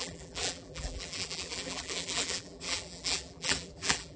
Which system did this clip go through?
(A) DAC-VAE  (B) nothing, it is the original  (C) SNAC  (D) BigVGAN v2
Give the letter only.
D